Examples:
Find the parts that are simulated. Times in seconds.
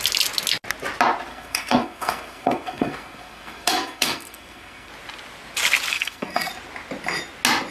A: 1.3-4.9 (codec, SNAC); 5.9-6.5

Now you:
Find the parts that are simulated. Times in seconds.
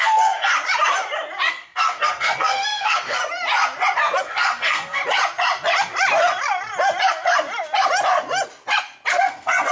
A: 0.0-0.5 (codec, SNAC); 1.5-3.2; 4.2-5.0; 9.1-9.7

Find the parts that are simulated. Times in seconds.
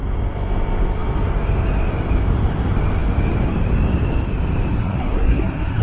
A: 4.7-5.8 (codec, SNAC)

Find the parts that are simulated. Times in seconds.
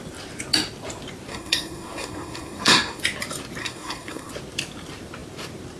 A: 1.3-3.0 (codec, SNAC); 3.6-4.3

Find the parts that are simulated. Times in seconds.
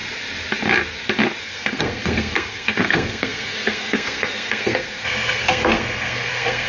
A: 1.4-6.7 (codec, SNAC)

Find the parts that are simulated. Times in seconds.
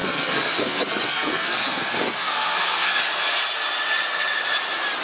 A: 0.0-3.0 (codec, SNAC)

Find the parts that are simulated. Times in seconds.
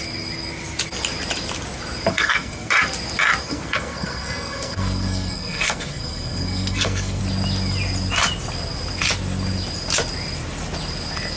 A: 2.1-2.7 (codec, SNAC); 3.4-7.2